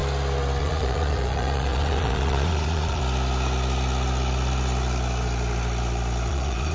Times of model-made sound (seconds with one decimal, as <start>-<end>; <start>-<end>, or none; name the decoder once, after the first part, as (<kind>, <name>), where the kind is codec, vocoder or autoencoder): 0.6-3.0 (vocoder, Vocos); 6.3-6.7